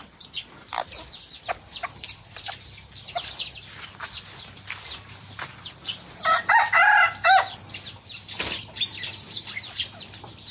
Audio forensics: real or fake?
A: real